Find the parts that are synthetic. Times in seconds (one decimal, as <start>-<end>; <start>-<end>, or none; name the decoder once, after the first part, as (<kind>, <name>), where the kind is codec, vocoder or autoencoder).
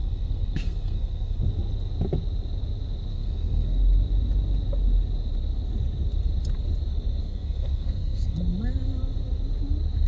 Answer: 0.0-1.4 (codec, SNAC); 3.1-3.8; 7.2-8.4